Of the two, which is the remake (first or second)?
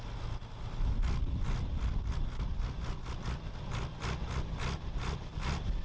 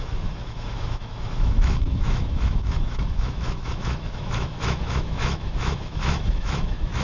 second